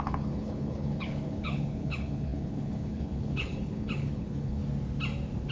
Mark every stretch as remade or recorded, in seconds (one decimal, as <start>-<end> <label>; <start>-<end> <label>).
0.0-4.6 remade; 4.6-5.5 recorded